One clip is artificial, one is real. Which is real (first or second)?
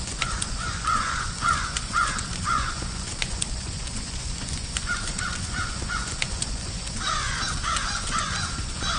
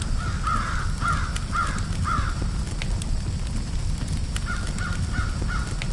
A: second